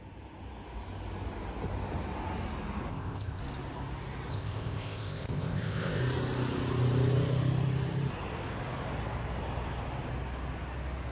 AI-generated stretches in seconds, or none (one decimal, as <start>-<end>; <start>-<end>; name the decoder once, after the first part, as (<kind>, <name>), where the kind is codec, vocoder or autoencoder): 2.9-3.4 (codec, ZipCodec); 4.3-6.0